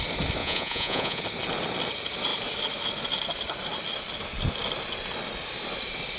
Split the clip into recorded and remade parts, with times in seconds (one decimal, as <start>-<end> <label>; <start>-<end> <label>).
0.0-0.4 recorded; 0.4-1.2 remade; 1.2-6.2 recorded